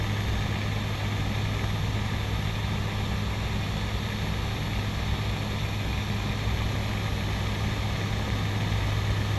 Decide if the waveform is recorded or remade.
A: recorded